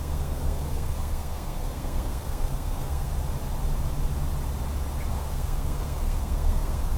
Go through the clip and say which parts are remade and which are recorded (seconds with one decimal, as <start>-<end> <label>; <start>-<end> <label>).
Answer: 0.0-3.1 remade; 3.1-5.1 recorded; 5.1-7.0 remade